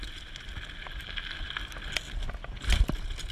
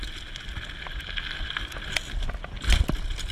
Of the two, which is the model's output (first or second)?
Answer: second